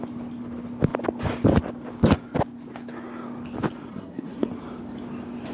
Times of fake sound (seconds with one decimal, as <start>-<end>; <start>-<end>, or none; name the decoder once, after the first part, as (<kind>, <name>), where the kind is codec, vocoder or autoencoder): 3.9-4.5 (codec, SNAC)